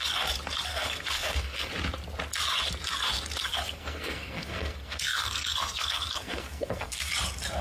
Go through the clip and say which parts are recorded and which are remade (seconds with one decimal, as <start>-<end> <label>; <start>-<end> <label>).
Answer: 0.0-0.7 recorded; 0.7-1.7 remade; 1.7-3.5 recorded; 3.5-7.1 remade; 7.1-7.6 recorded